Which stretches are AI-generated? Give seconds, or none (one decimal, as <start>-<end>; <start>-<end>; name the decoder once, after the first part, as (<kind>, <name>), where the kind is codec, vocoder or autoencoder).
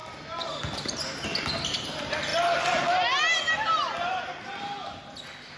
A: none